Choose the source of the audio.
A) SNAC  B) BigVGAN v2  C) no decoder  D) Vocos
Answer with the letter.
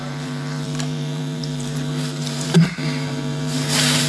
B